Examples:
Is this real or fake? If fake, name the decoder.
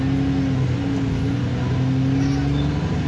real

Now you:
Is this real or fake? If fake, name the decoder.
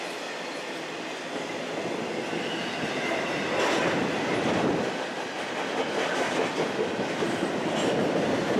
real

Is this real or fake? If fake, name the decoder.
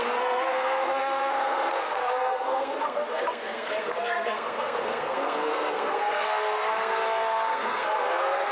fake, codec, SNAC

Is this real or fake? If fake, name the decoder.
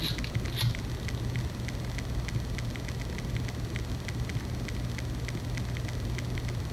real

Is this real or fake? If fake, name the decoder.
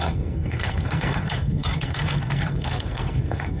fake, codec, SNAC